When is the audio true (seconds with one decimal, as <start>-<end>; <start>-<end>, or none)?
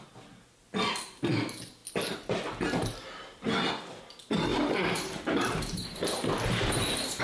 0.0-4.5